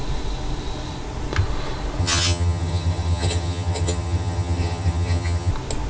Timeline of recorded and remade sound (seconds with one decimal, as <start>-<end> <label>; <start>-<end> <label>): 0.0-2.0 recorded; 2.0-5.5 remade; 5.5-5.9 recorded